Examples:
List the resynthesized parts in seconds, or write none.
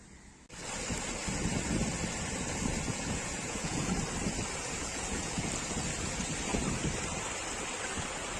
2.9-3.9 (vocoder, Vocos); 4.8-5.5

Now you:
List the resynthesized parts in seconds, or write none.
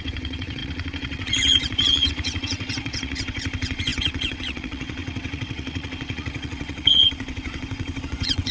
0.0-8.5 (vocoder, WaveNeXt)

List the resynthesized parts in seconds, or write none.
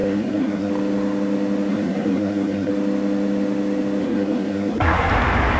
0.0-0.7 (codec, SNAC); 1.7-2.7; 4.0-5.1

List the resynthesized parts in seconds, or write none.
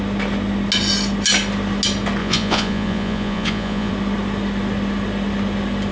2.2-3.9 (vocoder, Vocos)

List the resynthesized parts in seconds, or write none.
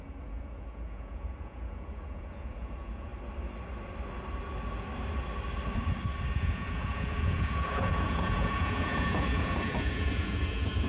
0.0-3.1 (vocoder, Vocos); 6.4-10.9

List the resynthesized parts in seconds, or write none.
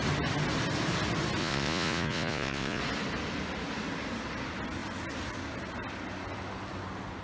1.4-2.8 (vocoder, Vocos)